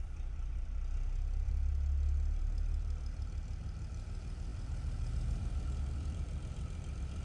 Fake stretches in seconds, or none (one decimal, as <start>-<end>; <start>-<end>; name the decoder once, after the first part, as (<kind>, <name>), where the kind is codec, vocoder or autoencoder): 0.0-1.7 (vocoder, BigVGAN v2); 2.4-7.2